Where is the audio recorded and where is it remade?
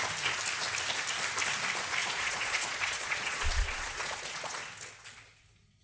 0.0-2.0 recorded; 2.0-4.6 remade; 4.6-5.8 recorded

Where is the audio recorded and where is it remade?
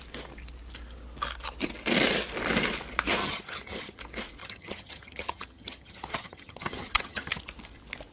0.0-3.2 recorded; 3.2-4.0 remade; 4.0-4.4 recorded; 4.4-7.4 remade; 7.4-8.1 recorded